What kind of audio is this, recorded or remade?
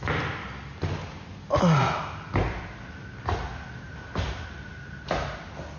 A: recorded